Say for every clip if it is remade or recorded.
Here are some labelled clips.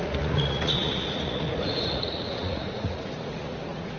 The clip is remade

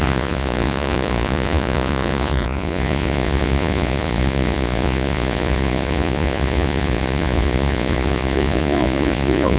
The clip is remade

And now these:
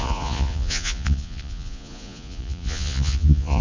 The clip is remade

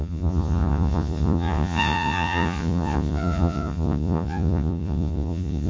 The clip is remade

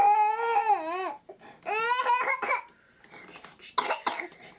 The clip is recorded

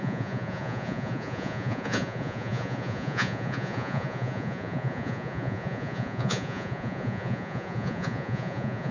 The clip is remade